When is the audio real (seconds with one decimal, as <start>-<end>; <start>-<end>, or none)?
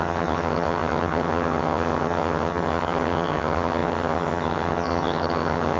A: none